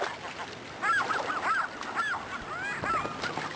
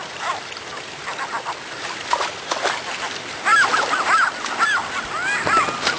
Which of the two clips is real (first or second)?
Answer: first